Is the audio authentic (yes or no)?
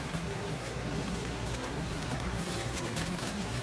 no